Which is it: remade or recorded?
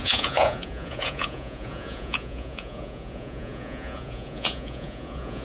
remade